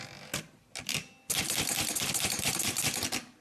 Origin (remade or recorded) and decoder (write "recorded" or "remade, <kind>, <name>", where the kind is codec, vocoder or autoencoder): recorded